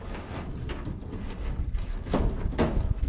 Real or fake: real